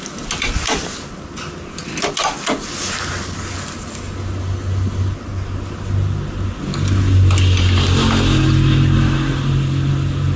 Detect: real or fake real